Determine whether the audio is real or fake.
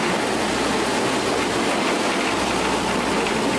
real